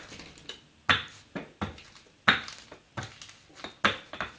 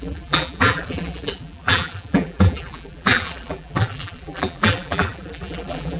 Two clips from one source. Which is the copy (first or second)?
second